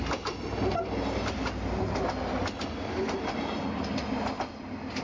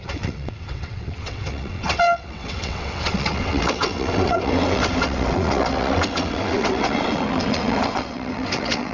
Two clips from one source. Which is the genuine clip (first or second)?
first